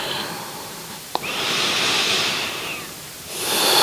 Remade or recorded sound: remade